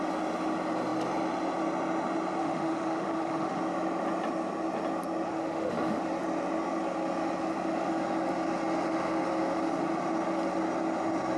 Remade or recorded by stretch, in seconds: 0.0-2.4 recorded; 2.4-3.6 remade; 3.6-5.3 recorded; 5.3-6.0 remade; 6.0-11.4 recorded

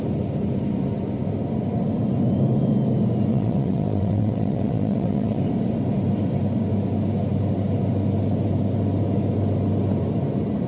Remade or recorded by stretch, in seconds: 0.0-3.3 recorded; 3.3-5.4 remade; 5.4-10.7 recorded